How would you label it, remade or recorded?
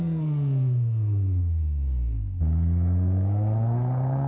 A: remade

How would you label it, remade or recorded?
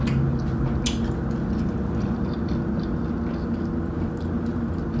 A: recorded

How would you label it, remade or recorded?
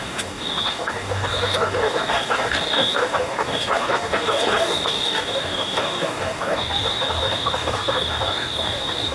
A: remade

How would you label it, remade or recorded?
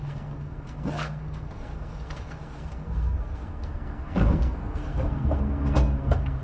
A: remade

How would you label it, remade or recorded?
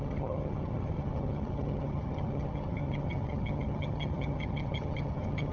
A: remade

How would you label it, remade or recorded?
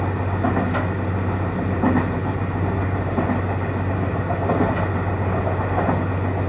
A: recorded